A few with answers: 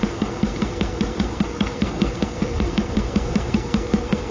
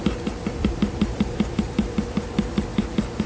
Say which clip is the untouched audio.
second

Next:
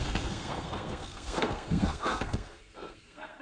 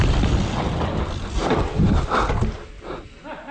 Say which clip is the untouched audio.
second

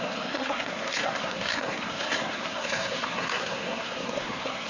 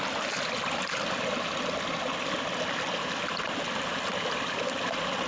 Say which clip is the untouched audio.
second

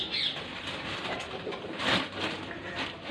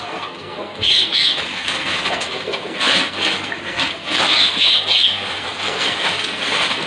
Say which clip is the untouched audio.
first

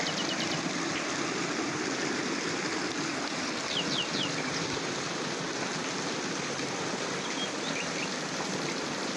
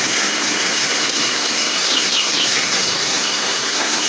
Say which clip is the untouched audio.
first